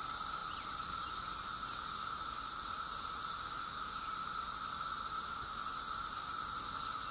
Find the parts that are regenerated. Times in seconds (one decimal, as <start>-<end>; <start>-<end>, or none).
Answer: none